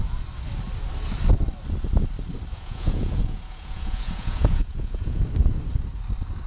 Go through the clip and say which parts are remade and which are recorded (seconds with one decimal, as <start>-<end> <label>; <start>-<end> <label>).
0.0-2.5 recorded; 2.5-5.2 remade; 5.2-6.5 recorded